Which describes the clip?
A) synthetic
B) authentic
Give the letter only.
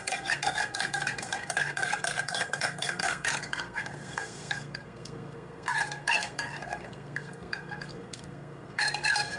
A